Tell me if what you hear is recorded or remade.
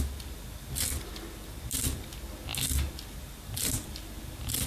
recorded